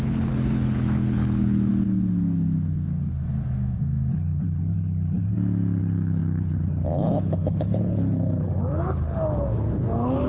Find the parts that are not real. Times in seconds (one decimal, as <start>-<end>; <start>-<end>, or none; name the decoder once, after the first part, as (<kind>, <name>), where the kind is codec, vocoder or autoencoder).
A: 0.0-1.7 (codec, HILCodec); 4.1-5.3; 5.8-10.3

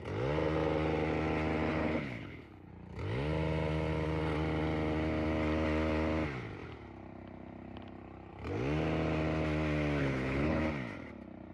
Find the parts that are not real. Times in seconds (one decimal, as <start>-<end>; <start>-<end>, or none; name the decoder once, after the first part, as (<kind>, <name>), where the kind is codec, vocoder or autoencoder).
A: 1.7-2.7 (codec, HILCodec); 10.0-10.6

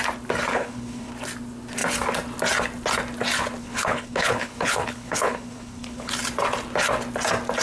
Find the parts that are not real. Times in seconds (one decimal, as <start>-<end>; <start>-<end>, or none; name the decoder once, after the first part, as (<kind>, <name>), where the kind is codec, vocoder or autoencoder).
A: 0.5-1.1 (codec, HILCodec); 3.6-6.1

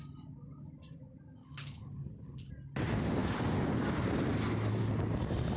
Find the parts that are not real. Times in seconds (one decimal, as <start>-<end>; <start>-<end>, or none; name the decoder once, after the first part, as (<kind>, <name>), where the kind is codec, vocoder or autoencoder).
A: 1.4-2.5 (codec, HILCodec)

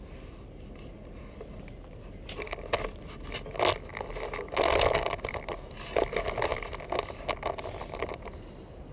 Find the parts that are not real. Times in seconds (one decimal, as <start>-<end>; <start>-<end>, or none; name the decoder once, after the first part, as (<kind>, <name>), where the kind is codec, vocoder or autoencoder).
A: none